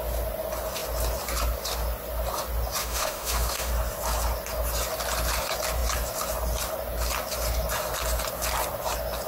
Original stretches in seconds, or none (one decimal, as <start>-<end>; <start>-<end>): 0.0-2.8; 3.7-9.3

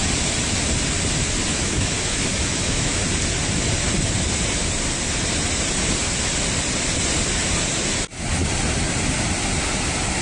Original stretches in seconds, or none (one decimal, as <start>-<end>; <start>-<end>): 0.0-1.5; 3.0-10.2

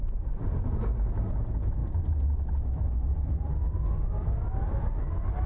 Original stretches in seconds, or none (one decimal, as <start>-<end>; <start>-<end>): 0.0-5.5

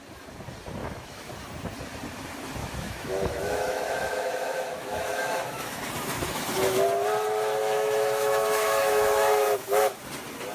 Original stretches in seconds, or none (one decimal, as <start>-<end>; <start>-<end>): 0.0-0.8; 1.3-2.6; 5.8-7.6; 10.0-10.5

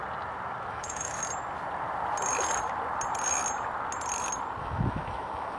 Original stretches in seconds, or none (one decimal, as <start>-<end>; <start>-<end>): 0.0-0.7; 1.2-4.6

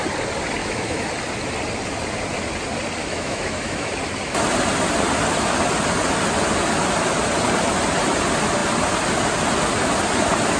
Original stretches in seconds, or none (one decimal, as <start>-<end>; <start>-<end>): 0.0-0.6; 1.1-3.0; 3.9-10.6